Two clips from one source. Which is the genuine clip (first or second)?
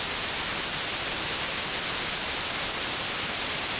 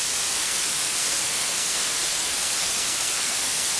first